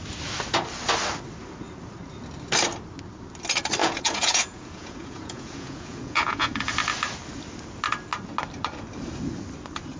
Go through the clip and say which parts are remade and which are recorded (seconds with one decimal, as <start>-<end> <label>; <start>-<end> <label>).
0.0-3.8 recorded; 3.8-6.7 remade; 6.7-10.0 recorded